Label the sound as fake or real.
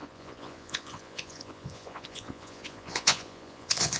fake